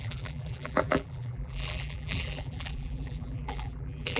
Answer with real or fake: fake